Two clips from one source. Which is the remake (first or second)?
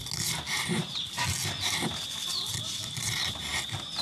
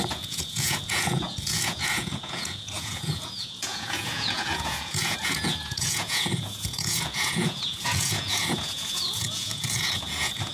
second